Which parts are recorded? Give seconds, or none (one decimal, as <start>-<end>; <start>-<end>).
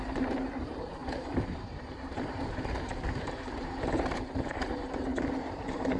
none